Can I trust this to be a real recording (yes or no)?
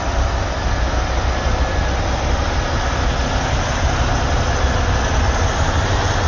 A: yes